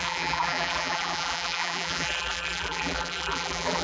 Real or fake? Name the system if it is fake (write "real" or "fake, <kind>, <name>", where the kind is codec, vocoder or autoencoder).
fake, vocoder, BigVGAN v2